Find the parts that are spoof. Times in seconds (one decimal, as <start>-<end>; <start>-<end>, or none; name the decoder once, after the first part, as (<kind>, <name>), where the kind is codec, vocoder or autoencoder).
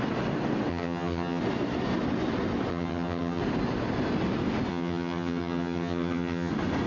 0.7-1.4 (vocoder, HiFi-GAN); 2.7-3.4; 4.7-6.5